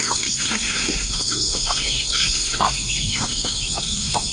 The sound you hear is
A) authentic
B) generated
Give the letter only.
B